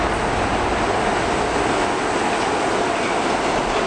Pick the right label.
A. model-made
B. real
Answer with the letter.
B